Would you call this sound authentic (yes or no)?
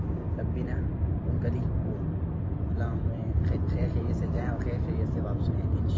no